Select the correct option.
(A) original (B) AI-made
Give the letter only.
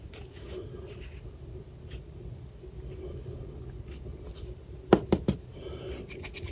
A